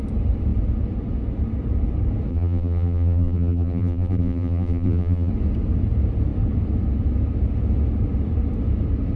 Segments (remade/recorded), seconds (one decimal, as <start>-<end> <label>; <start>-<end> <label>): 0.0-2.3 recorded; 2.3-5.3 remade; 5.3-9.2 recorded